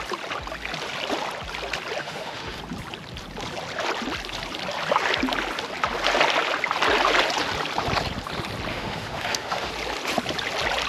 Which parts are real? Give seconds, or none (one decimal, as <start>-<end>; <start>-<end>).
0.0-2.0; 2.6-8.7; 9.7-10.9